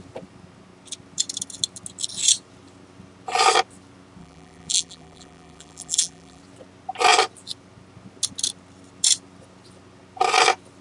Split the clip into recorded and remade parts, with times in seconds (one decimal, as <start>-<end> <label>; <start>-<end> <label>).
0.0-4.2 recorded; 4.2-6.4 remade; 6.4-10.8 recorded